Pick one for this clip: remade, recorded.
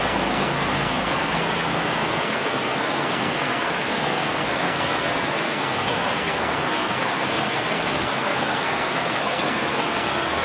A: remade